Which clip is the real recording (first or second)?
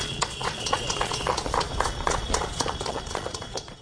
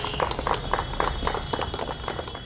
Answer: second